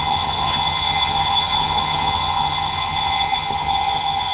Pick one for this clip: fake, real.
fake